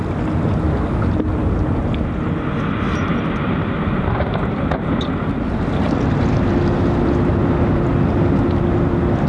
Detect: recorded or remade recorded